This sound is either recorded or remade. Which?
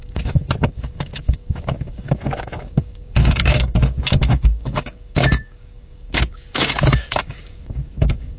remade